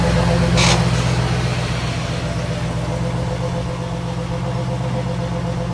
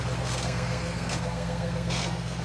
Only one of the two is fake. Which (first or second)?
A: second